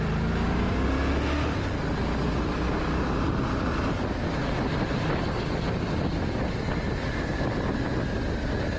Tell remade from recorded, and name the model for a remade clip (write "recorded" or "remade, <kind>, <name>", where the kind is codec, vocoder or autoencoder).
recorded